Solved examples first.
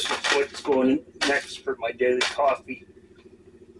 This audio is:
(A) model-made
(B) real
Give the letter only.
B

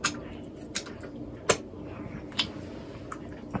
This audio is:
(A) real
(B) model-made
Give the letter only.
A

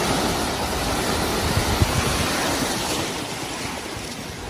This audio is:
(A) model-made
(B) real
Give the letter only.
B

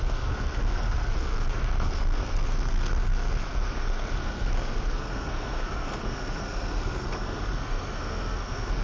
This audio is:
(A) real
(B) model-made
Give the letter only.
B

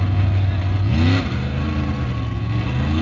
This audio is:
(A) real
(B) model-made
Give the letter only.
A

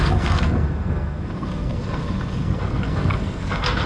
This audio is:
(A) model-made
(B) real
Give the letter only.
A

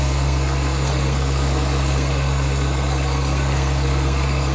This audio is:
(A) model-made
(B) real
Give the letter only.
A